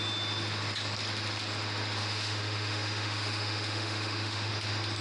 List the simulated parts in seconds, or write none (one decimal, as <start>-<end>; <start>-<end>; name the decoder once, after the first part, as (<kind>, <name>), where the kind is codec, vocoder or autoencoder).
2.0-4.5 (autoencoder, DAC-VAE)